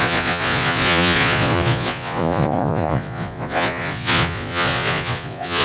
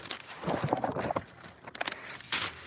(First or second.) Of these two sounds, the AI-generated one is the first